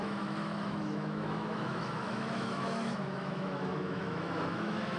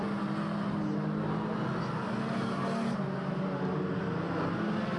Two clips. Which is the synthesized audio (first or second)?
first